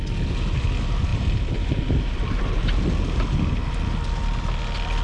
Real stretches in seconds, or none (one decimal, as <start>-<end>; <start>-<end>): 0.0-1.1; 2.8-5.0